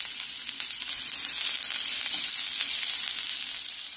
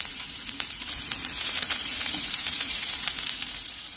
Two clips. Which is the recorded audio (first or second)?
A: first